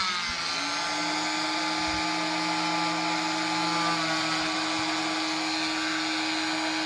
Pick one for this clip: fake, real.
real